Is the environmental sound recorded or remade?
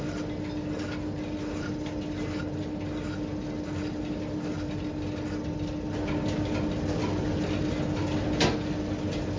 recorded